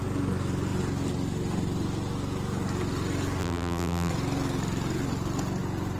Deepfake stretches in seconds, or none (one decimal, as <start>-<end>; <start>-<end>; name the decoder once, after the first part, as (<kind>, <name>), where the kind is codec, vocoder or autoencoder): 3.4-4.1 (vocoder, BigVGAN v2)